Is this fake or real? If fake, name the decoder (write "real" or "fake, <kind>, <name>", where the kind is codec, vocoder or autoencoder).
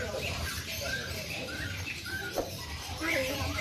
fake, vocoder, BigVGAN v2